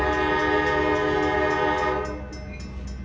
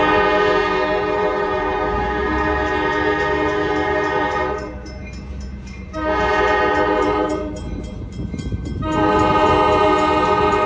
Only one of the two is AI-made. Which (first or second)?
second